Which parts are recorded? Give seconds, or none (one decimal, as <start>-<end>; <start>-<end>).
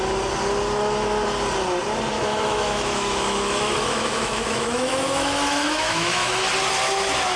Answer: 0.0-2.1; 6.5-7.4